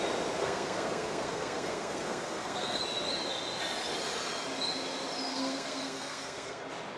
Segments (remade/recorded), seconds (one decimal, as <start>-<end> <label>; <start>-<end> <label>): 0.0-0.4 recorded; 0.4-2.8 remade; 2.8-5.3 recorded; 5.3-6.6 remade; 6.6-7.0 recorded